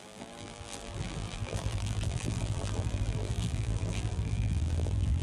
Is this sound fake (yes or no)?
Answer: yes